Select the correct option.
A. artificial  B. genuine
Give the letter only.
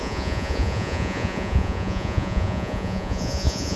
A